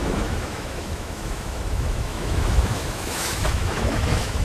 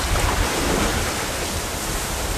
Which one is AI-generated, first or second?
first